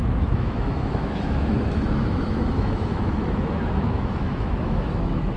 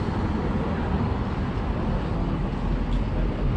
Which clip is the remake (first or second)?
first